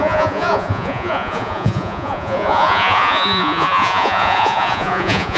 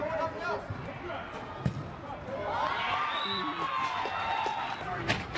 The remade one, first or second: first